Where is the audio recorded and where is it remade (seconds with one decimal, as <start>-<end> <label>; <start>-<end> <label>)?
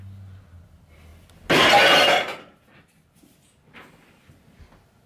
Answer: 0.0-5.1 recorded